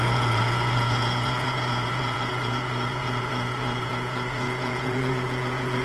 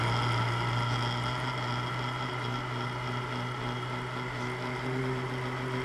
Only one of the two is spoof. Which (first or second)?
first